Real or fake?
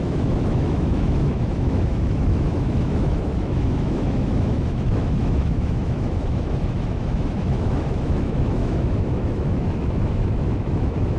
fake